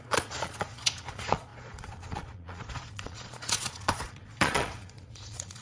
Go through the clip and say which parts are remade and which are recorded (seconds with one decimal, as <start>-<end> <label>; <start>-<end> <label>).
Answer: 0.0-5.6 remade